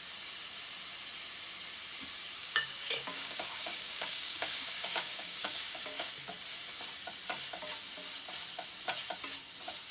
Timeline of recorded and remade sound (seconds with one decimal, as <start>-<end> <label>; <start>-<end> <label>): 0.0-2.4 recorded; 2.4-6.1 remade; 6.1-9.9 recorded